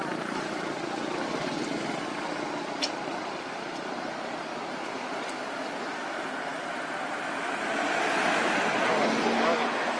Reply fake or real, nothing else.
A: real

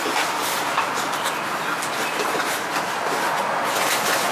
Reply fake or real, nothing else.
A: real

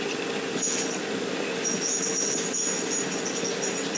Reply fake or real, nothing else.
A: real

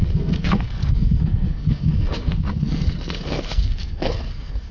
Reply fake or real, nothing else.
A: fake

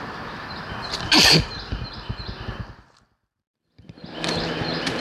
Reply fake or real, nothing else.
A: real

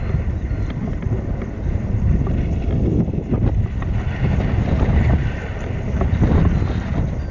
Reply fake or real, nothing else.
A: real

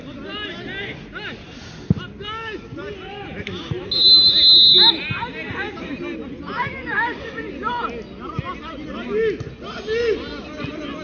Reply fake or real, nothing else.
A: real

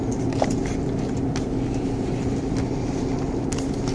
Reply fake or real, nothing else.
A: real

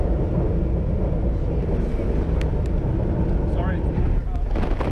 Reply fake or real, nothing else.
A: real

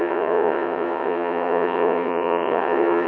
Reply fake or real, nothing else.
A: fake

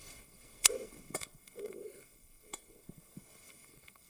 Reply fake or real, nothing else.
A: fake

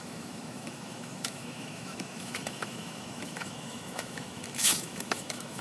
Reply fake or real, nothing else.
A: fake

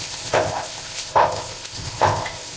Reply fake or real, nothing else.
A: fake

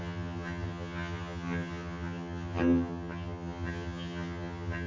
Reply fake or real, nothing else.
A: fake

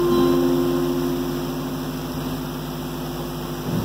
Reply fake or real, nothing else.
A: real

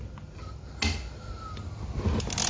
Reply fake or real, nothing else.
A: real